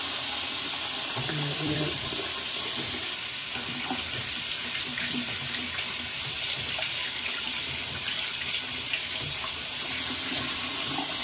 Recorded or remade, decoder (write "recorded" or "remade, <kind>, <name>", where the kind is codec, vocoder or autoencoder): remade, vocoder, BigVGAN v2